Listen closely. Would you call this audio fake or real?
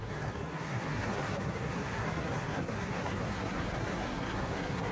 fake